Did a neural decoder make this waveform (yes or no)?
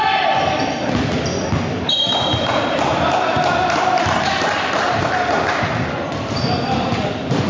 yes